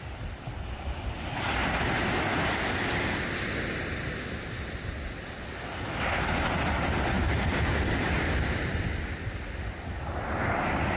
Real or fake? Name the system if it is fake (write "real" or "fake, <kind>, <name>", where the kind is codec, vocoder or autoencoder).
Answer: real